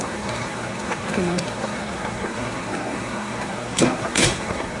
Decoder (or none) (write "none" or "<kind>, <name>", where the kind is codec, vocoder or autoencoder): codec, SNAC